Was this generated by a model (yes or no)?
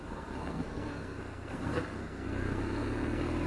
yes